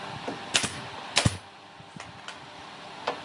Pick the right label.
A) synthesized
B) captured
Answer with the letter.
B